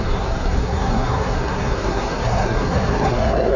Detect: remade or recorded remade